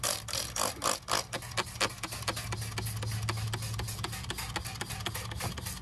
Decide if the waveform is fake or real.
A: real